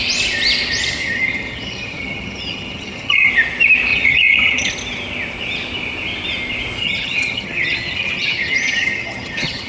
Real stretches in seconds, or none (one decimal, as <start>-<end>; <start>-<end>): 0.0-1.0; 3.3-3.9; 4.7-6.8